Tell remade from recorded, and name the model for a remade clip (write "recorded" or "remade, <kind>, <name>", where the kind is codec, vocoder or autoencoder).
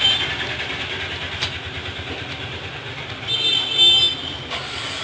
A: recorded